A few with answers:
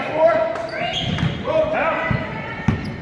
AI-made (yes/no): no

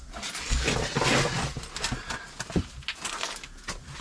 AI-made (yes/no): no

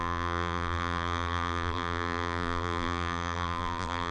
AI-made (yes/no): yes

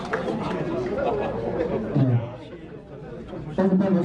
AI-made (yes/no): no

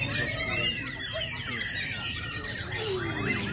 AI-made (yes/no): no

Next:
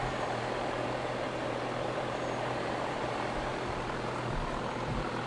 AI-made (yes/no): yes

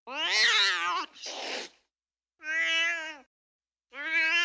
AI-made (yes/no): no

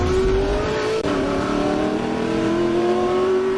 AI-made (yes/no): yes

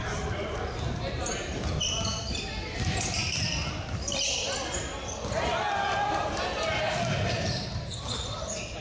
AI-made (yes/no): yes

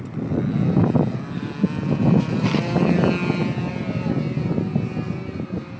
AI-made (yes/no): no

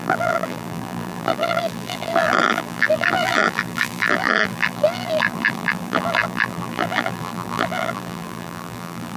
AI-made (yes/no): yes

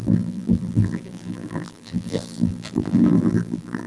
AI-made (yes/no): yes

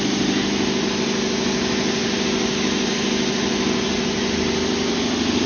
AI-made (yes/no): no